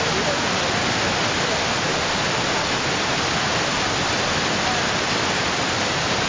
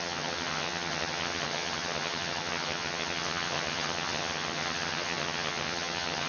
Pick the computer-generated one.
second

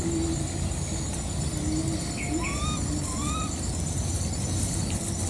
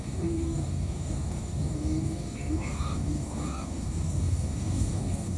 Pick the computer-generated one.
second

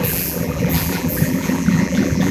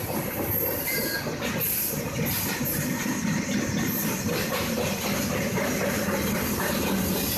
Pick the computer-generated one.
first